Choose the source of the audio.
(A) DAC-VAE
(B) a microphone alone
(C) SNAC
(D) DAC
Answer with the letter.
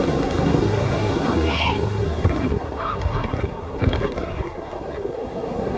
C